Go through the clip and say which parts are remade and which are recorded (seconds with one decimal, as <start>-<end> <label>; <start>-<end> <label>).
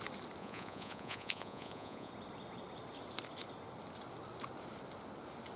0.0-0.4 recorded; 0.4-2.1 remade; 2.1-5.6 recorded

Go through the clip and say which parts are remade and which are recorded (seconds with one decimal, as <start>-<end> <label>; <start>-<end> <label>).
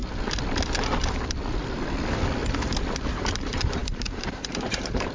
0.0-3.1 recorded; 3.1-5.1 remade